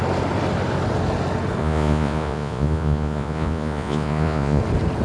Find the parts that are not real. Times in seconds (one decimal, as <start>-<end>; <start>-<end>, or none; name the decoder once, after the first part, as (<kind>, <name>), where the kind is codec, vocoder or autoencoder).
1.6-4.6 (vocoder, Vocos)